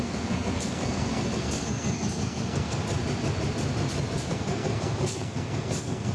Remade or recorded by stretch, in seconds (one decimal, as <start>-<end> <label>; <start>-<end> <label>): 0.0-2.8 remade; 2.8-4.1 recorded; 4.1-6.1 remade